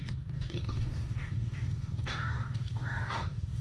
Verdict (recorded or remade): remade